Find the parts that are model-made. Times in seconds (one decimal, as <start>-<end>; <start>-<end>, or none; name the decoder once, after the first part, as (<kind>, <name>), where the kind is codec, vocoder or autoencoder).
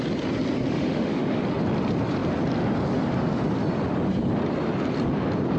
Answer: 0.7-1.4 (autoencoder, DAC-VAE)